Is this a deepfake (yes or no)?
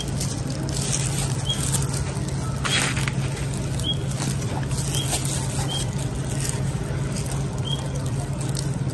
no